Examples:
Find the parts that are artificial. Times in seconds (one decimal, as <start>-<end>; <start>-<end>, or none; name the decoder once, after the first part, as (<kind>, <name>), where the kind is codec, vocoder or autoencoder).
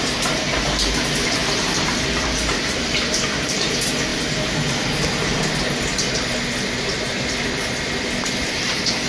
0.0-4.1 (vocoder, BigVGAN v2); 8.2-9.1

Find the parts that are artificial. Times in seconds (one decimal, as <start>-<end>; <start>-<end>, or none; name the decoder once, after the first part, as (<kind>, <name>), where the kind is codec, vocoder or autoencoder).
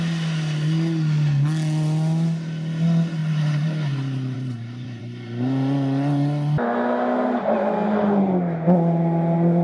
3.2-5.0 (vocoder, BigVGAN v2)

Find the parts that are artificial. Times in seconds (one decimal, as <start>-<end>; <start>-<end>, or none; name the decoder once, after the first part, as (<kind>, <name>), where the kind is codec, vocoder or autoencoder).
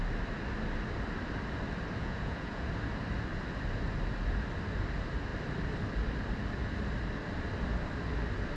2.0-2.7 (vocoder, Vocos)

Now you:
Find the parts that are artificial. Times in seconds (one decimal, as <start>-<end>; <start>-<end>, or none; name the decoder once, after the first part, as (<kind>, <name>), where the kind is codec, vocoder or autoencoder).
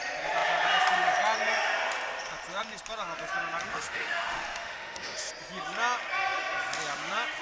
3.7-5.3 (autoencoder, DAC-VAE)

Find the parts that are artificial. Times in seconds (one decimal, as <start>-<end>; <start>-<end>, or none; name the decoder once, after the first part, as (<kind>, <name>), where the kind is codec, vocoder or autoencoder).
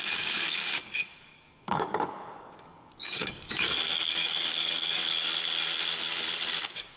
0.0-5.0 (codec, DAC); 6.6-7.0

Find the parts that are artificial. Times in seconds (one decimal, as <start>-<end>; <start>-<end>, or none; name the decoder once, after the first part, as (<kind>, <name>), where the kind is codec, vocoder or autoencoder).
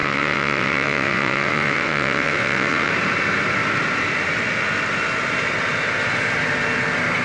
0.0-2.9 (vocoder, WaveNeXt)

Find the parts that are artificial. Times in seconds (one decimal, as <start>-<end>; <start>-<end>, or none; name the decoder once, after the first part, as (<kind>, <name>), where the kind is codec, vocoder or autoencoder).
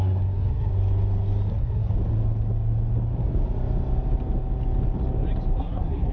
0.0-0.7 (codec, SNAC); 1.5-1.9; 5.6-6.1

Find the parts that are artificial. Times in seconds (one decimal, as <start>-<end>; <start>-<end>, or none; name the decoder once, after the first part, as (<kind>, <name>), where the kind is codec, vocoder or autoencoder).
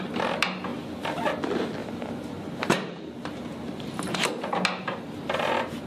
1.8-4.3 (vocoder, BigVGAN v2)